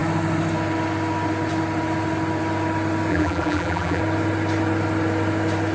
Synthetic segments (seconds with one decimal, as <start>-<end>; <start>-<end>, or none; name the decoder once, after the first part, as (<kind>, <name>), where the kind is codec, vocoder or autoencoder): 3.1-4.0 (vocoder, BigVGAN v2)